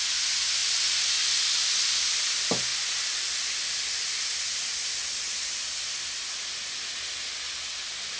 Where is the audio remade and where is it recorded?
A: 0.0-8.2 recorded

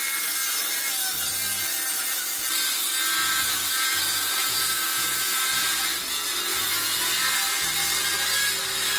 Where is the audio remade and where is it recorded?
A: 0.0-3.2 recorded; 3.2-5.8 remade; 5.8-6.5 recorded; 6.5-7.1 remade; 7.1-9.0 recorded

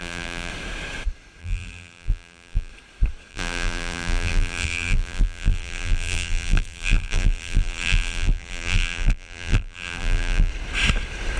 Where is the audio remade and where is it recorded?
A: 0.0-0.5 remade; 0.5-1.4 recorded; 1.4-2.7 remade; 2.7-3.3 recorded; 3.3-10.5 remade; 10.5-11.4 recorded

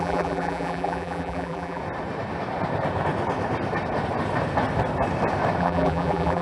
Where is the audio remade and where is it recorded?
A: 0.0-1.8 remade; 1.8-5.6 recorded; 5.6-6.4 remade

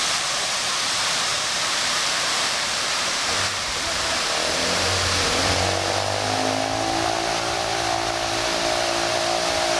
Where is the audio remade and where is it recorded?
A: 0.0-1.3 recorded; 1.3-5.5 remade; 5.5-9.8 recorded